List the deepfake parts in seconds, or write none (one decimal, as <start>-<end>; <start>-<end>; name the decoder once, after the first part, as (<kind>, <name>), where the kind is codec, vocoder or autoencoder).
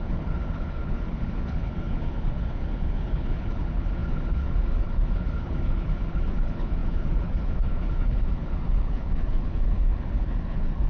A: 0.0-10.9 (codec, HILCodec)